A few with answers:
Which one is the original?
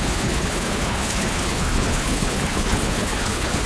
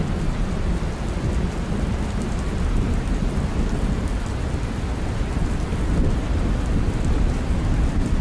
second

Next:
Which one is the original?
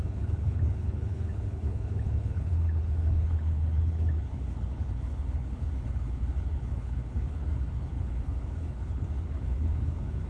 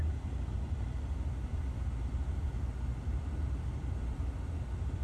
second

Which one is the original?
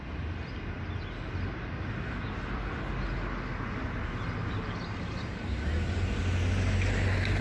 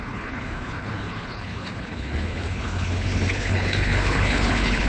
first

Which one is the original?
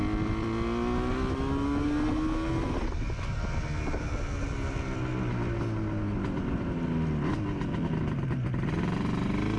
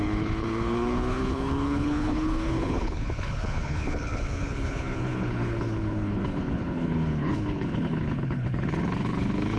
first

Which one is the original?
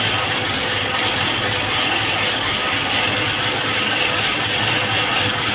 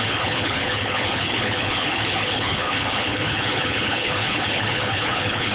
first